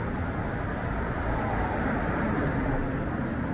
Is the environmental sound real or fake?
real